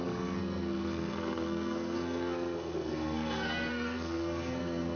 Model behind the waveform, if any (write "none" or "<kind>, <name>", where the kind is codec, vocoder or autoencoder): codec, SNAC